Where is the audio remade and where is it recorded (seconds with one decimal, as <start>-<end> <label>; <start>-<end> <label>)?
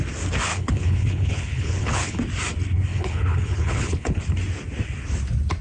0.0-0.5 recorded; 0.5-2.2 remade; 2.2-2.9 recorded; 2.9-4.2 remade; 4.2-5.6 recorded